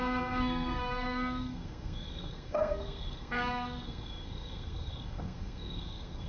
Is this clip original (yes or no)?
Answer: no